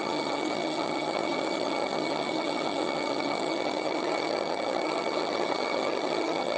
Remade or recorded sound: remade